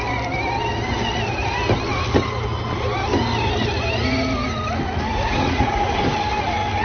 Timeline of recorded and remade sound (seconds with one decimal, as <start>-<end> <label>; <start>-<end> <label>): 0.0-5.1 recorded; 5.1-6.0 remade; 6.0-6.8 recorded